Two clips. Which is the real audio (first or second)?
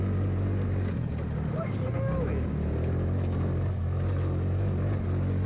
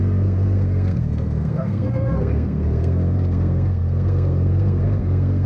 first